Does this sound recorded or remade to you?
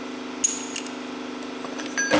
recorded